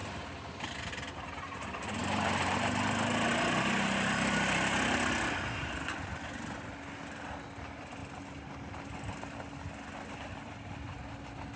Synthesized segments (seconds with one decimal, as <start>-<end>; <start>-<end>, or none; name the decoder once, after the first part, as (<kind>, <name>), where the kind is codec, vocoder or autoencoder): none